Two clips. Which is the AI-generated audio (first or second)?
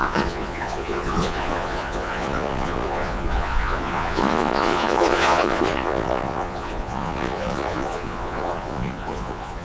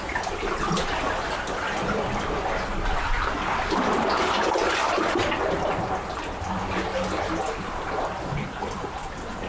first